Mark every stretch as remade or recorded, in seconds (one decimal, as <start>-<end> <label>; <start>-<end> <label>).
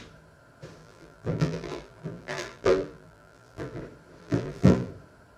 0.0-0.8 recorded; 0.8-3.8 remade; 3.8-4.2 recorded; 4.2-4.9 remade; 4.9-5.4 recorded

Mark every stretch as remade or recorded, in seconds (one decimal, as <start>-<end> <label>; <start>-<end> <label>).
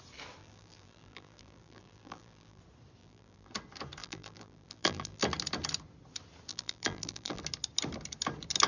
0.0-0.4 recorded; 0.4-2.6 remade; 2.6-3.0 recorded; 3.0-3.5 remade; 3.5-4.0 recorded; 4.0-5.2 remade; 5.2-6.5 recorded; 6.5-7.4 remade; 7.4-8.7 recorded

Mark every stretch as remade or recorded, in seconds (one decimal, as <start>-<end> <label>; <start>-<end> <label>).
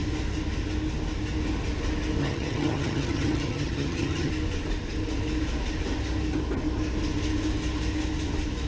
0.0-2.2 recorded; 2.2-4.3 remade; 4.3-8.7 recorded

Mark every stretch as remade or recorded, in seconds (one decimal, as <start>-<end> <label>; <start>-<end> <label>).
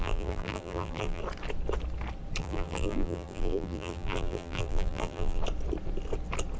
0.0-1.2 remade; 1.2-2.4 recorded; 2.4-5.4 remade; 5.4-6.6 recorded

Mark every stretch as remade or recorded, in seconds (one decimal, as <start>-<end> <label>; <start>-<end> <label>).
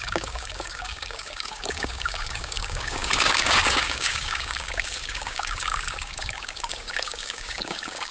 0.0-8.1 remade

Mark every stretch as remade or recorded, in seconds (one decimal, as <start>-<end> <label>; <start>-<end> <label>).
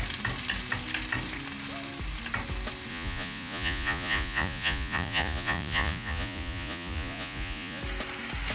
0.0-2.9 recorded; 2.9-7.8 remade; 7.8-8.5 recorded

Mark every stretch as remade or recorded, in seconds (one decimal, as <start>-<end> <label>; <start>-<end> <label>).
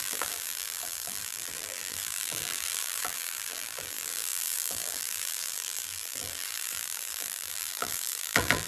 0.0-8.7 remade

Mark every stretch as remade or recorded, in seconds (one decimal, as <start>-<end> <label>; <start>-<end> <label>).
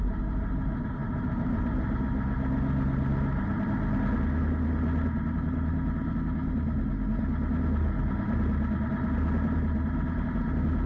0.0-10.9 recorded